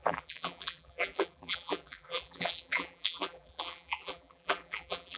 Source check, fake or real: fake